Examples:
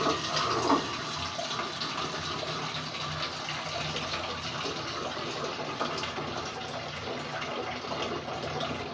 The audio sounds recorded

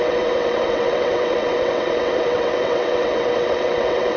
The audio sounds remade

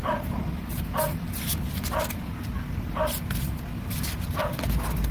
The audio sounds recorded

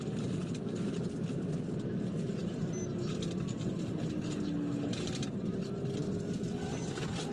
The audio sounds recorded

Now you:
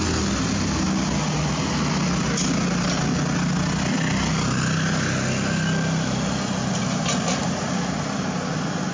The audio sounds recorded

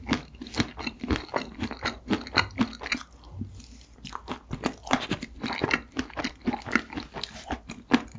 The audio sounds recorded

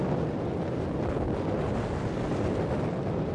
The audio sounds recorded